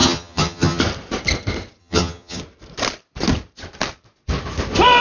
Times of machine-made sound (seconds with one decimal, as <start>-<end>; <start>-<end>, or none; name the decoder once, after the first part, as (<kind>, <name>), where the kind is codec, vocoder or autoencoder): 0.0-0.8 (vocoder, HiFi-GAN); 1.8-2.4